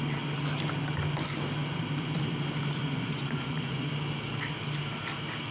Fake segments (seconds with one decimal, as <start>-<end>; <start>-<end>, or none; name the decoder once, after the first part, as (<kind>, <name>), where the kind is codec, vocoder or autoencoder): 2.8-3.9 (vocoder, Vocos)